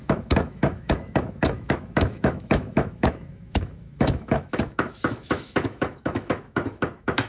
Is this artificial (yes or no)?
yes